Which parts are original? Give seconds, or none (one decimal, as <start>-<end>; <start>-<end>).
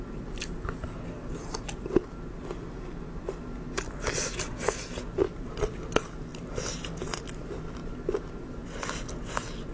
0.0-9.7